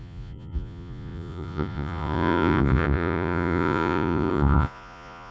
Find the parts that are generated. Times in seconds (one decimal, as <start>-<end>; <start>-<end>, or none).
0.0-5.3